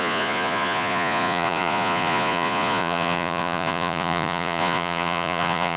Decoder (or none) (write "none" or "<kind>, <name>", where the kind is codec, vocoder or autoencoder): vocoder, Vocos